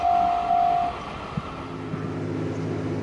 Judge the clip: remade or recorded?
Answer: recorded